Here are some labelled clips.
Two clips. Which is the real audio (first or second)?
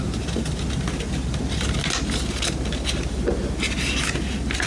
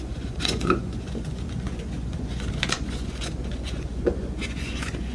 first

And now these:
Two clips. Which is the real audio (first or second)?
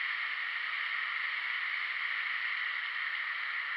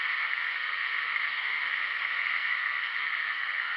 first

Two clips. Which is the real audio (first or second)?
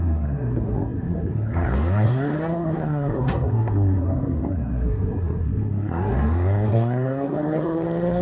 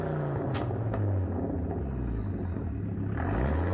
second